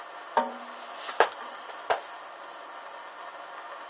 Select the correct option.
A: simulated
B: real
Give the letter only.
B